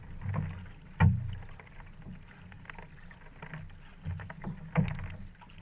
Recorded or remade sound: recorded